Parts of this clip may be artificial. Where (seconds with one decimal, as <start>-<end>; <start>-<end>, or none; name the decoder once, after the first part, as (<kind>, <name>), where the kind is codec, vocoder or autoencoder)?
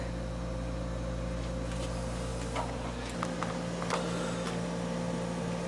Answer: none